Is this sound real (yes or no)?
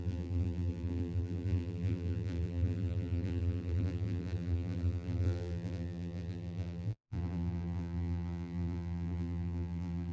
no